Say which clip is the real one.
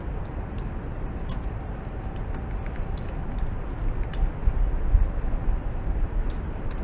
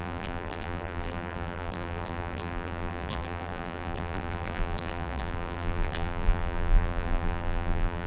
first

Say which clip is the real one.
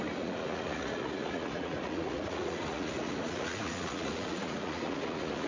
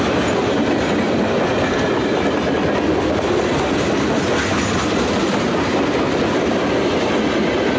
second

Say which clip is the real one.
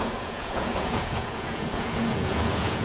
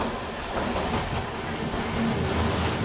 second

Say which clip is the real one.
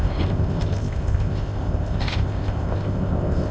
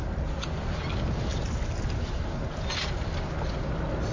second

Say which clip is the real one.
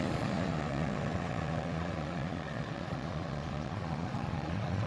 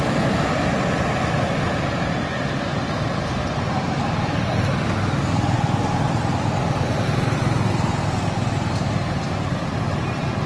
second